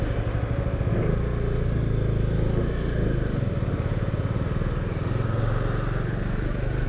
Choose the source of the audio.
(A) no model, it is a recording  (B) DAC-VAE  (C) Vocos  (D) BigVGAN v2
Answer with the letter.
A